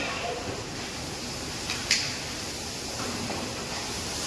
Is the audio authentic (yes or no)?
no